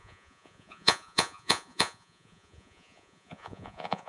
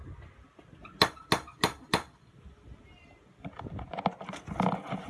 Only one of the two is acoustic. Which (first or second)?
second